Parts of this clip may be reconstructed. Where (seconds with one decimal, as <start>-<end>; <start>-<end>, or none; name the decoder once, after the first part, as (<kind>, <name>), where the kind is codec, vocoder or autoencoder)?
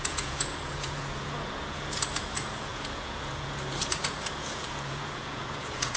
0.0-6.0 (vocoder, Vocos)